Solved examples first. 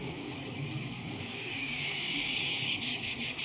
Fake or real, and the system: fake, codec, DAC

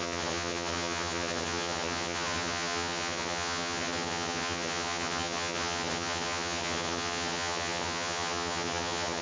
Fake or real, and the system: fake, vocoder, HiFi-GAN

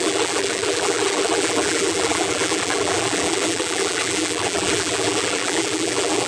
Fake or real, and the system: fake, vocoder, BigVGAN v2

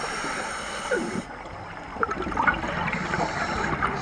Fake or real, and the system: real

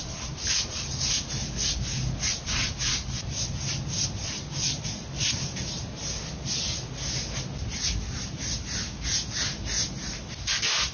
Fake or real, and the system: real